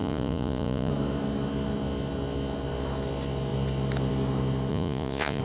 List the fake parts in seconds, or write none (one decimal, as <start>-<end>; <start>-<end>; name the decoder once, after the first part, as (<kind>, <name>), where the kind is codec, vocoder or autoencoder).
0.0-0.9 (vocoder, Vocos); 4.7-5.4